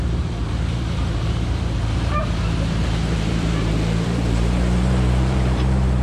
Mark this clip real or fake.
fake